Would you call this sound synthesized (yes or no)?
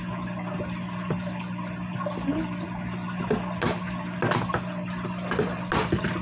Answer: no